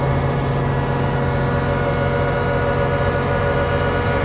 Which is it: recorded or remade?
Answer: recorded